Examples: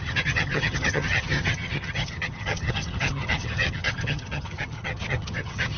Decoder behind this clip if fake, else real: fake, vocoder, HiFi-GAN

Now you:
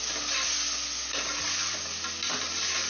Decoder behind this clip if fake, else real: real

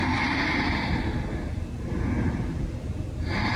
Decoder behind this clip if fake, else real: real